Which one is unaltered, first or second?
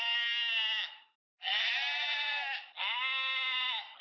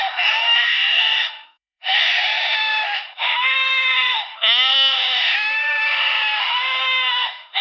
first